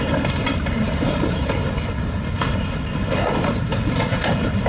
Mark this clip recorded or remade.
remade